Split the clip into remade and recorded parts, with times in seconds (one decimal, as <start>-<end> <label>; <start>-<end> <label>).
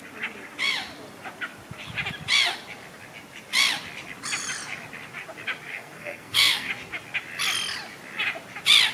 0.0-5.7 recorded; 5.7-6.7 remade; 6.7-8.9 recorded